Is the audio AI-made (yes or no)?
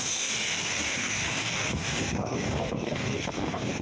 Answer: yes